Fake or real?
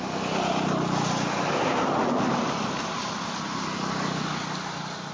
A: real